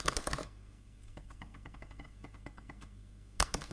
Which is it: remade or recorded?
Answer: remade